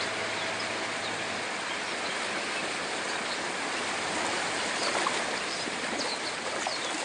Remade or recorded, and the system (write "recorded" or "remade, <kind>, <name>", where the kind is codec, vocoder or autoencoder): recorded